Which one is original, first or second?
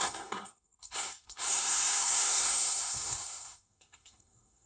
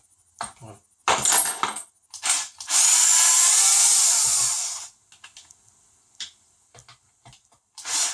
second